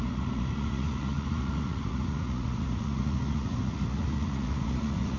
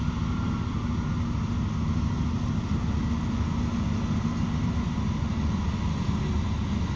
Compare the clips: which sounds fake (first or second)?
first